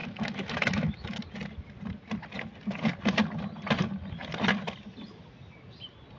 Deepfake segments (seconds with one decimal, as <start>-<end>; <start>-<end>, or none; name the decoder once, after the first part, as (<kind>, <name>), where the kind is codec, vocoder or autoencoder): 0.0-1.2 (autoencoder, DAC-VAE)